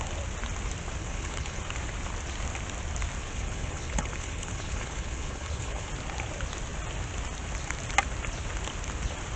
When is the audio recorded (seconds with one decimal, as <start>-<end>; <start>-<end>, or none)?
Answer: 0.0-1.0; 1.6-3.2; 5.9-9.4